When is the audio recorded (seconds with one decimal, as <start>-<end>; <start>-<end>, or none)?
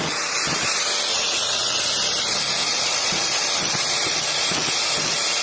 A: 0.0-1.1; 1.8-2.7; 3.3-5.4